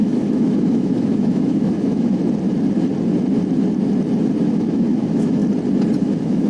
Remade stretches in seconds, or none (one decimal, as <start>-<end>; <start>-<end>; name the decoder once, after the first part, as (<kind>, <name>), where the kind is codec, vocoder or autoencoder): 0.0-2.2 (autoencoder, DAC-VAE); 4.4-5.4; 6.0-6.5